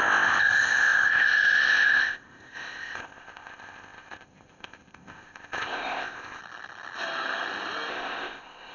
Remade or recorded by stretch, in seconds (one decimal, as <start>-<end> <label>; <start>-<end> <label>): 0.0-6.4 remade; 6.4-7.9 recorded; 7.9-8.7 remade